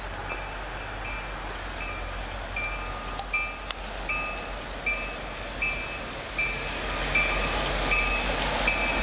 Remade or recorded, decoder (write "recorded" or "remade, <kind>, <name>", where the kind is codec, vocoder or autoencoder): recorded